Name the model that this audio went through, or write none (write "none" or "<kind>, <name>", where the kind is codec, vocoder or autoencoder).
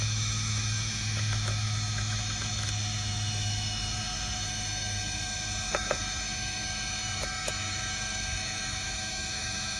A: autoencoder, DAC-VAE